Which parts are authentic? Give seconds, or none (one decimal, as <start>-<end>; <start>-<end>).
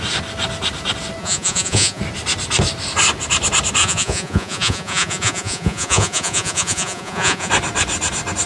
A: 0.0-1.2; 2.0-3.8; 7.5-8.5